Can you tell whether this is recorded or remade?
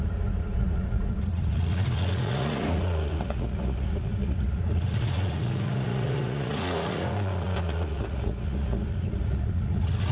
remade